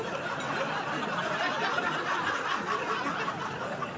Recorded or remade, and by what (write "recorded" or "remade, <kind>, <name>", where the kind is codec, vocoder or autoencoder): recorded